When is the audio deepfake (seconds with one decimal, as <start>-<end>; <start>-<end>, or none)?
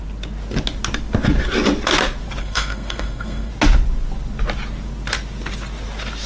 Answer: 2.4-3.5